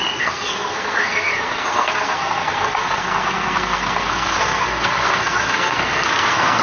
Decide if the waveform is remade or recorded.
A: remade